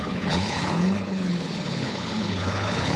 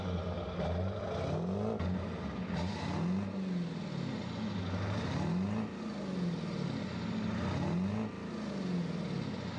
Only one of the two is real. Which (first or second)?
second